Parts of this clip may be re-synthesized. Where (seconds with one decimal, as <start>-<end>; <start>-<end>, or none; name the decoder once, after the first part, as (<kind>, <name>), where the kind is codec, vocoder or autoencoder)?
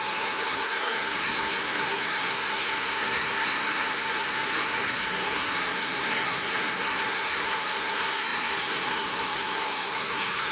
0.0-10.5 (codec, SNAC)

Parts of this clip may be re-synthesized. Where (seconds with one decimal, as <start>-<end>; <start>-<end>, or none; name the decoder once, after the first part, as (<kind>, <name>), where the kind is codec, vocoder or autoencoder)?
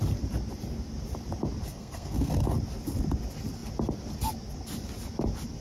1.7-2.3 (codec, SNAC)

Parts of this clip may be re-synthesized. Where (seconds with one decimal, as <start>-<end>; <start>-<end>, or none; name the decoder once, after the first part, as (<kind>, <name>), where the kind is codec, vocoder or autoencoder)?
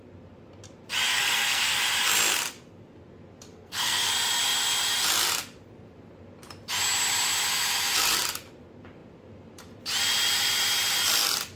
1.1-1.8 (codec, SNAC); 3.5-4.1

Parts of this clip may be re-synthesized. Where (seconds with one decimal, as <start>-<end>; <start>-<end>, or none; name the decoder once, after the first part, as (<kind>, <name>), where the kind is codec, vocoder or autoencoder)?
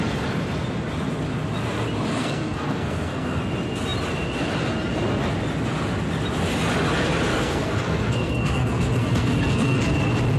2.1-3.4 (codec, SNAC); 7.3-9.8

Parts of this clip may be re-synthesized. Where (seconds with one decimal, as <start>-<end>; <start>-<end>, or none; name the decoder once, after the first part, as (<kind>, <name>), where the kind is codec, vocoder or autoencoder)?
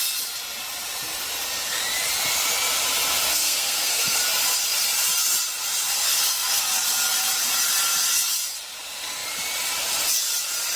3.3-4.2 (codec, SNAC); 6.0-6.6